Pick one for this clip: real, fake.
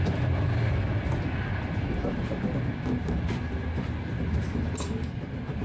real